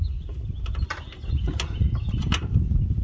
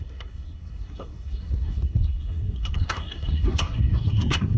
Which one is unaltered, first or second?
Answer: first